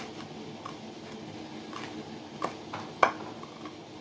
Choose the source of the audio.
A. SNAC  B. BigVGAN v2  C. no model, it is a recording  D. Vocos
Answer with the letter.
C